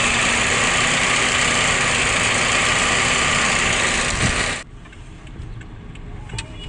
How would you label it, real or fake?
real